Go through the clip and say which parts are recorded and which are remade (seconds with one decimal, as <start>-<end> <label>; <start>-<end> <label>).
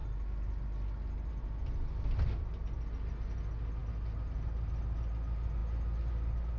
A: 0.0-6.6 recorded